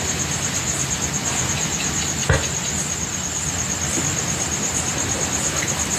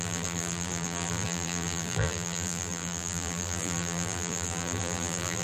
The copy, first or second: second